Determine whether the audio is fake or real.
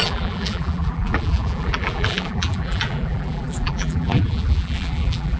fake